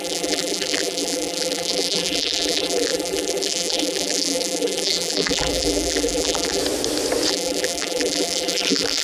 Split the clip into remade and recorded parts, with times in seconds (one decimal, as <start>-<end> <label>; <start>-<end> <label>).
0.0-6.6 remade; 6.6-7.3 recorded; 7.3-9.0 remade